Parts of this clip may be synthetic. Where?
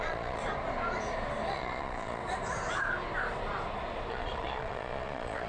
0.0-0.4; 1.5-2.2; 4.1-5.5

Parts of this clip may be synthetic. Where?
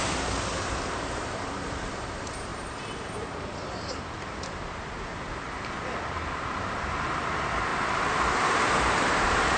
0.0-5.1; 6.0-9.6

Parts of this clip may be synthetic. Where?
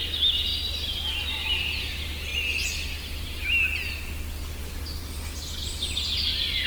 none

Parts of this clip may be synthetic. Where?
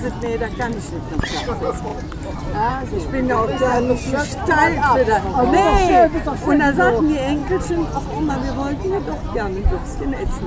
none